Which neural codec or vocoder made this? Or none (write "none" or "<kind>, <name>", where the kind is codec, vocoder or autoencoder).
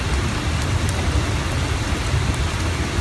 none